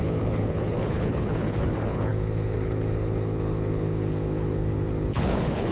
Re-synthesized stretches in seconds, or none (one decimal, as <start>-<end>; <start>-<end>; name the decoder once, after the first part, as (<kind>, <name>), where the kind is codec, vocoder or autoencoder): 0.0-5.7 (codec, HILCodec)